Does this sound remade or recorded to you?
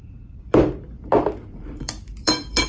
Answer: remade